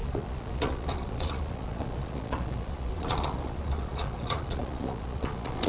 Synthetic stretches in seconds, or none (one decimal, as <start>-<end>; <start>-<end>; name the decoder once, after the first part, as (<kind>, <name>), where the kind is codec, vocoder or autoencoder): 0.0-5.7 (vocoder, Vocos)